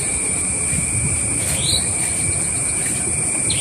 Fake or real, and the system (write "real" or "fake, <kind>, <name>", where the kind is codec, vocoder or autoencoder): fake, vocoder, BigVGAN v2